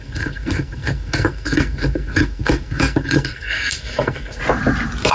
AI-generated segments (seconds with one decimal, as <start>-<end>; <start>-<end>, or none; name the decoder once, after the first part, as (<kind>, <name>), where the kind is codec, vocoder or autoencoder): 0.0-4.4 (codec, SNAC)